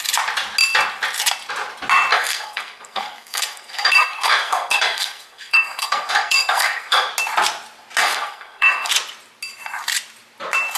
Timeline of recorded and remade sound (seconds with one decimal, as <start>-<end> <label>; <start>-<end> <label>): 0.0-2.1 recorded; 2.1-7.1 remade; 7.1-8.0 recorded; 8.0-8.9 remade; 8.9-10.8 recorded